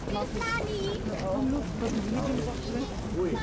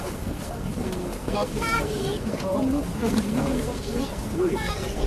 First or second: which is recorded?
first